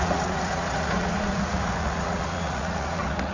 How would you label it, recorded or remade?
remade